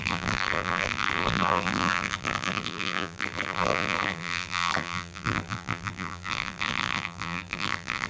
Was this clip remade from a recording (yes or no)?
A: yes